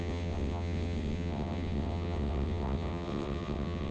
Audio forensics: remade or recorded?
remade